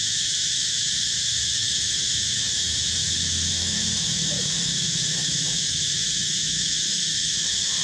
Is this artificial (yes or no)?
yes